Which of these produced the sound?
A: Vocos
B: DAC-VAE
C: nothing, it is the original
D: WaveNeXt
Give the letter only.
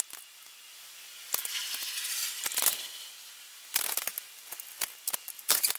C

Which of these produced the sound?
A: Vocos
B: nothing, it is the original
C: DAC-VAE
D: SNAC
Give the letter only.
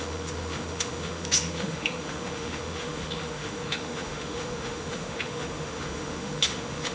C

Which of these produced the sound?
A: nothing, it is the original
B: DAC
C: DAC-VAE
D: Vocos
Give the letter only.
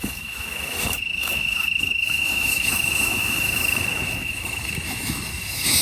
C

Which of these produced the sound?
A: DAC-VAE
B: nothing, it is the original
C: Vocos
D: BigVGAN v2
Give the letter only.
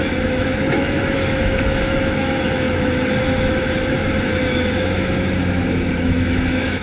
A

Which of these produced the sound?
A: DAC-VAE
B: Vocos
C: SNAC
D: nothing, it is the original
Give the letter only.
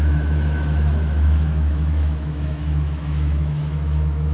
A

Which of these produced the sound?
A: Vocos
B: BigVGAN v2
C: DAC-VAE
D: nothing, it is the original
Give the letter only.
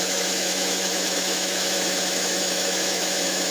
C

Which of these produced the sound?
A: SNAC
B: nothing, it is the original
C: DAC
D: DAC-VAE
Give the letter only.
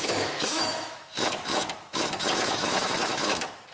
D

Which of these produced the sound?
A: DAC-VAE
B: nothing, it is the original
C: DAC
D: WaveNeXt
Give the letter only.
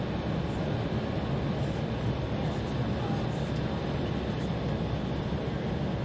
B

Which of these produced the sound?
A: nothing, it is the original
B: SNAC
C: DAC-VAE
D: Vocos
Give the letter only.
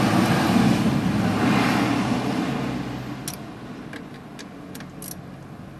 A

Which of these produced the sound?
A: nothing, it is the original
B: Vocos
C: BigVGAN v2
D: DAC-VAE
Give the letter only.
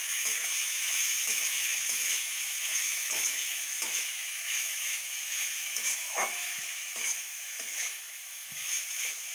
D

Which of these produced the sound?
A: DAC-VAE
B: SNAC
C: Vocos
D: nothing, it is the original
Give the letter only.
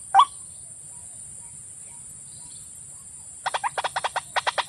D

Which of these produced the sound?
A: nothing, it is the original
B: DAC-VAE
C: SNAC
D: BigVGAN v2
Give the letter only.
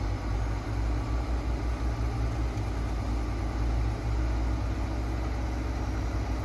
A